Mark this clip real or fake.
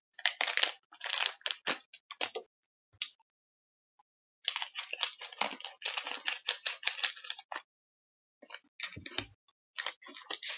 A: real